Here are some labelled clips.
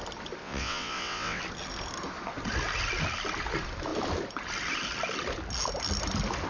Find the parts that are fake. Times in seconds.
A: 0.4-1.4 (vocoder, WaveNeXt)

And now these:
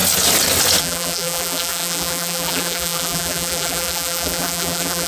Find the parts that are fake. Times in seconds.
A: 0.8-5.1 (vocoder, BigVGAN v2)

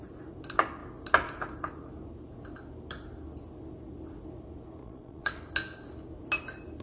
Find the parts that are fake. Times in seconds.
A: 4.8-5.4 (vocoder, Vocos)

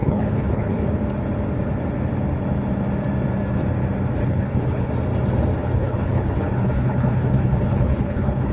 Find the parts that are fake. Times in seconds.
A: 0.0-0.8 (codec, HILCodec); 4.2-4.9; 5.6-8.5

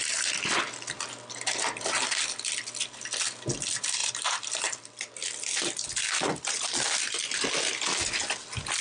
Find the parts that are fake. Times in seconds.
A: 4.0-6.9 (vocoder, BigVGAN v2)

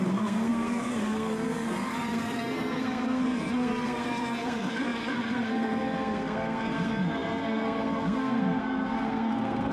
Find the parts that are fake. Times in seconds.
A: 0.0-9.7 (codec, SNAC)